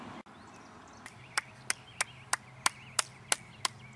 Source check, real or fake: real